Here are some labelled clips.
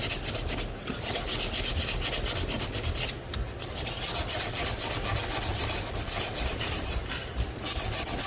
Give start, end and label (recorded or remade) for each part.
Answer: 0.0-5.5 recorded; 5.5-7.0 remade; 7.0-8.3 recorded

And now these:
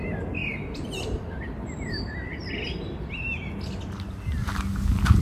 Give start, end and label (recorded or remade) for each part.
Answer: 0.0-0.4 recorded; 0.4-1.4 remade; 1.4-2.4 recorded; 2.4-3.3 remade; 3.3-5.2 recorded

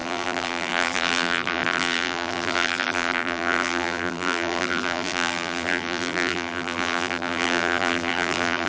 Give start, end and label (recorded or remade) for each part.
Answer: 0.0-8.7 remade

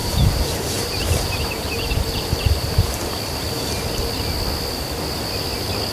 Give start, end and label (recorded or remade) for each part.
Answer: 0.0-3.1 remade; 3.1-5.9 recorded

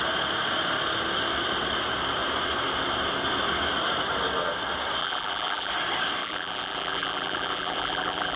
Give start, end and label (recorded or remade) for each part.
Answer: 0.0-5.0 recorded; 5.0-5.7 remade; 5.7-6.2 recorded; 6.2-8.4 remade

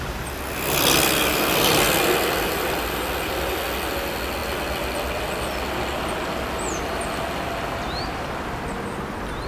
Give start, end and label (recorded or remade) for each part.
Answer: 0.0-9.5 recorded

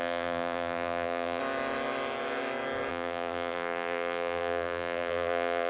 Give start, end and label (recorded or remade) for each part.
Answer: 0.0-1.4 remade; 1.4-2.9 recorded; 2.9-5.7 remade